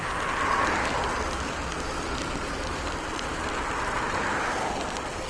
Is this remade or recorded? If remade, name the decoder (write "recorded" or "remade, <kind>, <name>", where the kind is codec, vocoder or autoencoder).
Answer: recorded